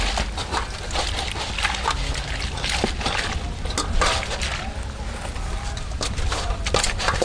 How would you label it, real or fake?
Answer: real